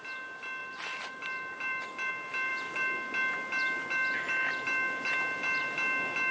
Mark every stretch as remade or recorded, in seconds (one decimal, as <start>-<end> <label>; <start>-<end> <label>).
0.0-0.6 recorded; 0.6-2.1 remade; 2.1-6.3 recorded